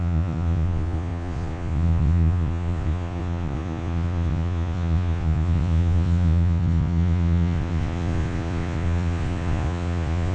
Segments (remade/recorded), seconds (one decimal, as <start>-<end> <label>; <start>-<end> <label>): 0.0-10.3 remade

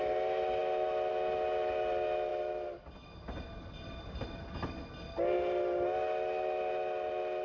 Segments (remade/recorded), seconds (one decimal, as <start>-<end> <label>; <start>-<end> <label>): 0.0-7.4 recorded

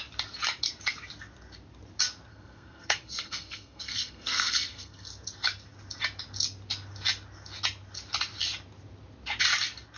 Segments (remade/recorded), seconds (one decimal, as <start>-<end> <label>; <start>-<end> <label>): 0.0-2.3 recorded; 2.3-5.1 remade; 5.1-10.0 recorded

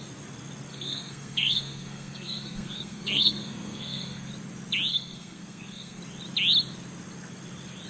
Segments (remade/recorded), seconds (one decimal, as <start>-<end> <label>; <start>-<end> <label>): 0.0-0.7 recorded; 0.7-4.3 remade; 4.3-4.9 recorded; 4.9-6.0 remade; 6.0-7.9 recorded

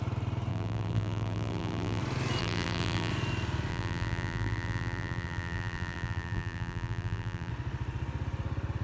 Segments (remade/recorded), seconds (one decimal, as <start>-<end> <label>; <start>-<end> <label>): 0.0-0.5 recorded; 0.5-2.0 remade; 2.0-2.4 recorded; 2.4-3.1 remade; 3.1-3.7 recorded; 3.7-7.5 remade; 7.5-8.8 recorded

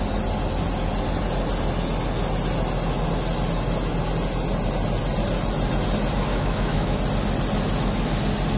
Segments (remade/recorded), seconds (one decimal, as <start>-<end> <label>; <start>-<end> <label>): 0.0-6.3 recorded; 6.3-7.0 remade; 7.0-8.6 recorded

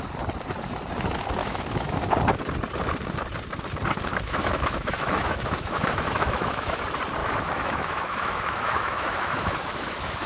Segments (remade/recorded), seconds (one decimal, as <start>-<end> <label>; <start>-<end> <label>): 0.0-1.4 recorded; 1.4-2.0 remade; 2.0-4.1 recorded; 4.1-6.8 remade; 6.8-7.2 recorded; 7.2-10.3 remade

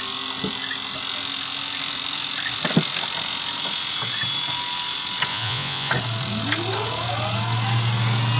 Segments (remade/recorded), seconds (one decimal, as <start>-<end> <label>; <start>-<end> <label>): 0.0-5.3 recorded; 5.3-5.9 remade; 5.9-8.4 recorded